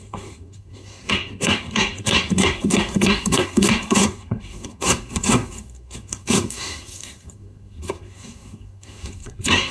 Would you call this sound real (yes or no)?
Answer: no